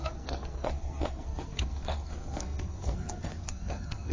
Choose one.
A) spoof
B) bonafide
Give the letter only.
A